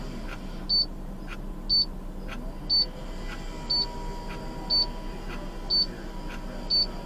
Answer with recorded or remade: recorded